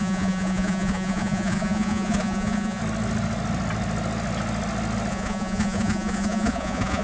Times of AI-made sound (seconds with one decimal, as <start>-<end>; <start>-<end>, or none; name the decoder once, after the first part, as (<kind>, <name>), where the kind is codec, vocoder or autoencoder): 0.0-2.8 (vocoder, Vocos); 5.1-7.0